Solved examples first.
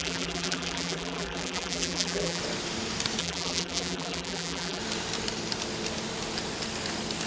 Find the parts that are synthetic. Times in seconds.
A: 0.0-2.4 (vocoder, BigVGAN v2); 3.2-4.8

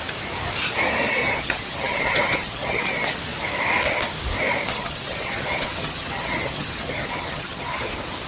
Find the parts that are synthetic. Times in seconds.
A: 1.2-2.8 (vocoder, HiFi-GAN); 4.7-7.9